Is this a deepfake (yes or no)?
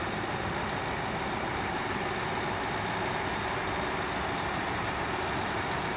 no